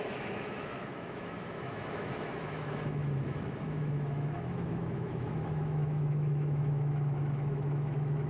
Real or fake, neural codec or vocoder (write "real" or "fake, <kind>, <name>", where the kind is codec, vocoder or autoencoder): fake, autoencoder, DAC-VAE